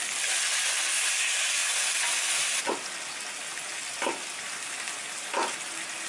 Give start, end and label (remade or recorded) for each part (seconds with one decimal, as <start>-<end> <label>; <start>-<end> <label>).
0.0-6.1 recorded